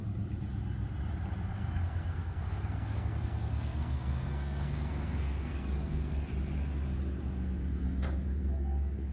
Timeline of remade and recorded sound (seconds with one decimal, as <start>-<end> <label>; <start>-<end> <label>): 0.0-1.5 recorded; 1.5-6.3 remade; 6.3-7.2 recorded; 7.2-9.1 remade